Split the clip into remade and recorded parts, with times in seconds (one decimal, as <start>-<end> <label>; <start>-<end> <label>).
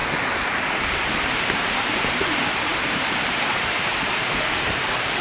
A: 0.0-0.7 recorded; 0.7-5.2 remade